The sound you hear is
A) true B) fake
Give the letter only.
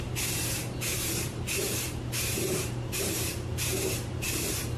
B